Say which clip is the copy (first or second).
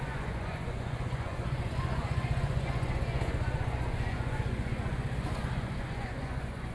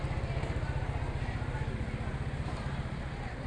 first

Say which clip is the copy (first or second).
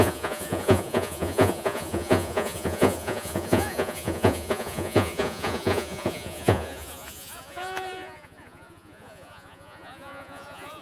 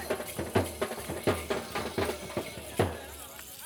first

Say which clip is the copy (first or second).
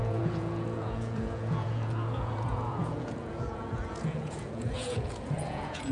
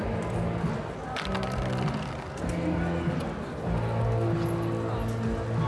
first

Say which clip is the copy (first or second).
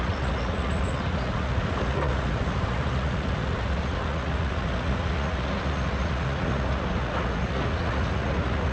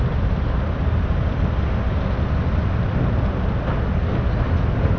first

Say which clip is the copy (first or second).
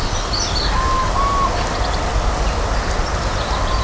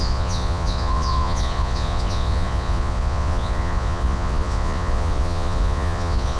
second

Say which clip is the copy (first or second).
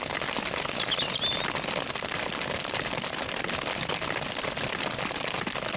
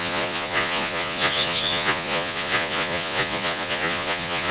second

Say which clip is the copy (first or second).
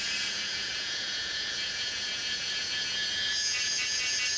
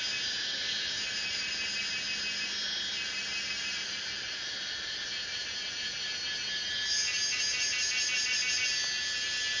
first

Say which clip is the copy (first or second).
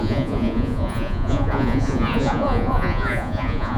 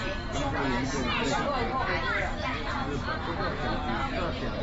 first